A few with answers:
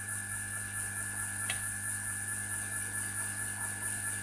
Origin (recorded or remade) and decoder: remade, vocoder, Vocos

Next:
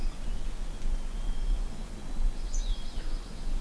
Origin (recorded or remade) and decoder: remade, vocoder, Vocos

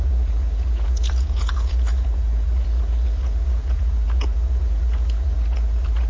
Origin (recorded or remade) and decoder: remade, vocoder, Vocos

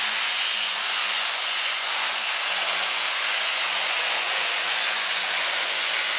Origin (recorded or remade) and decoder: remade, vocoder, Vocos